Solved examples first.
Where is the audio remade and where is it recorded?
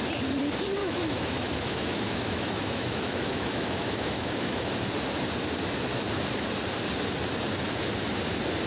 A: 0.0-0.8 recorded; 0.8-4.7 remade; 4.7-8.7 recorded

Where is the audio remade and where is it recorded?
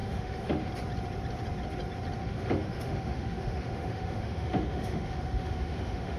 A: 0.0-0.7 remade; 0.7-2.2 recorded; 2.2-6.2 remade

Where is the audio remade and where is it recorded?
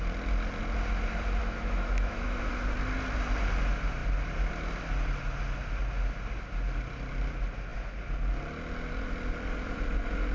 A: 0.0-1.4 recorded; 1.4-2.5 remade; 2.5-10.3 recorded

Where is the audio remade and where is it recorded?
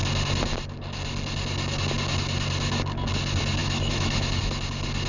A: 0.0-3.6 recorded; 3.6-4.4 remade; 4.4-5.1 recorded